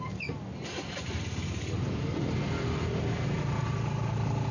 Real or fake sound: real